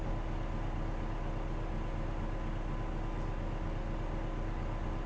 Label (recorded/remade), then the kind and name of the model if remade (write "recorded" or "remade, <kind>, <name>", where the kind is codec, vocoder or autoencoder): recorded